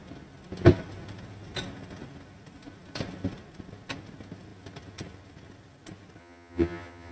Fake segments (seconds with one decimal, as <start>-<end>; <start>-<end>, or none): 6.2-7.1